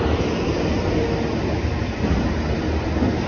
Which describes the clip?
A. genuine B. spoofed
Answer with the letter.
A